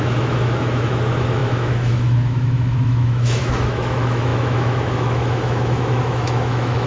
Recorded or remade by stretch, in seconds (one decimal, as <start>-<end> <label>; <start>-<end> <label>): 0.0-6.9 remade